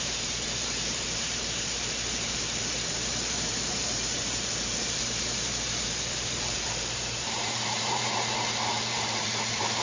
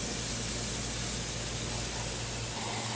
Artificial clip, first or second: first